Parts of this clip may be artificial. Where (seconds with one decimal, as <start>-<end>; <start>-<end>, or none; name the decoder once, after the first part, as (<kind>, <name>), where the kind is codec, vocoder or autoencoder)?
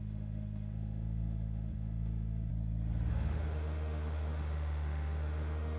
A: 0.0-2.5 (autoencoder, DAC-VAE); 3.1-5.8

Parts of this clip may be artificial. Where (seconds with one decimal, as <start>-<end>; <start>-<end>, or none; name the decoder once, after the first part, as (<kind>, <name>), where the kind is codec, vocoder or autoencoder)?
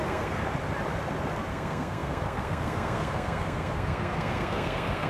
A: 0.0-0.4 (codec, SNAC); 1.5-5.1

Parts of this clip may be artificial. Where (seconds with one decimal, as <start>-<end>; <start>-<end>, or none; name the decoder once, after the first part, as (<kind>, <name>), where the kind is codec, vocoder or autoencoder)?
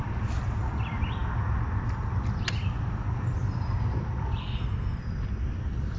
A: 4.4-5.0 (codec, SNAC)